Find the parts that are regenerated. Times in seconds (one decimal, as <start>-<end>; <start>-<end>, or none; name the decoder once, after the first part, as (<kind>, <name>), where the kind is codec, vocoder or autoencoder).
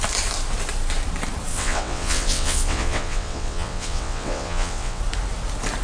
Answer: 1.5-5.0 (vocoder, WaveNeXt)